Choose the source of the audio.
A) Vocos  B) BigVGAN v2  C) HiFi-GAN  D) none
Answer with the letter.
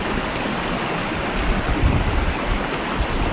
D